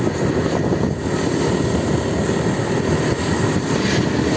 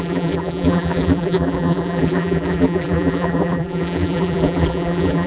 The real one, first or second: first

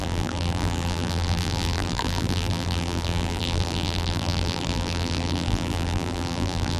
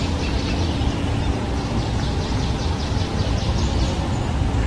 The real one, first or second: second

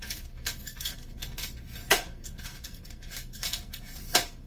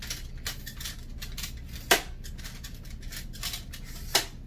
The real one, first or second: second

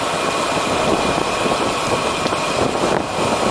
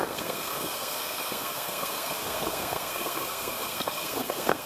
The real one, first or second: first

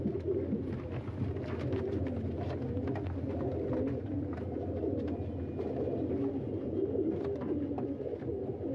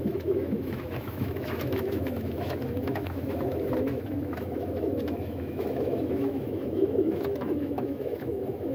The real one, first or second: first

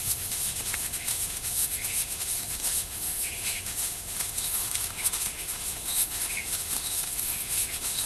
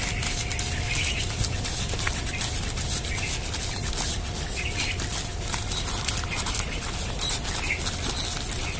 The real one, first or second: second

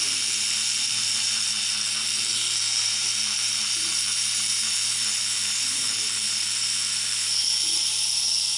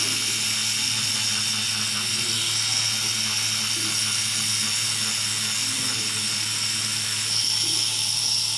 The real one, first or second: second